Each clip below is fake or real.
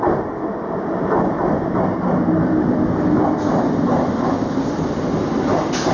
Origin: real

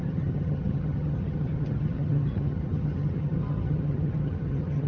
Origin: fake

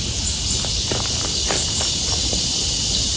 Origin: real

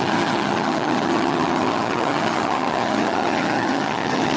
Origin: fake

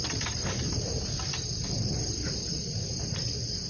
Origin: real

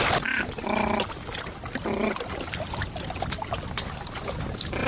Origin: real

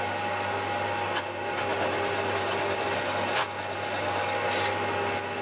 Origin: real